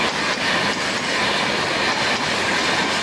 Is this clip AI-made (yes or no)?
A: no